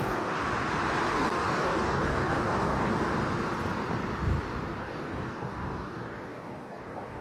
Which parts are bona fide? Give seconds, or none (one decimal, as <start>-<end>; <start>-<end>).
0.4-1.1; 2.9-4.8